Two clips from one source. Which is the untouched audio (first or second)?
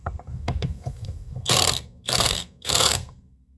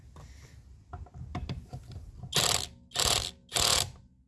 second